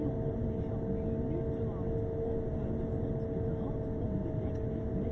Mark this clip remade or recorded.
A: recorded